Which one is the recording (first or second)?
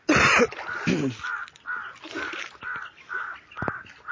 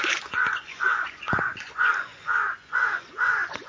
first